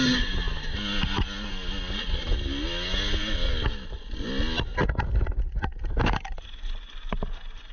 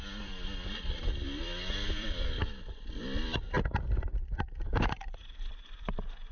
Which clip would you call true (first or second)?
first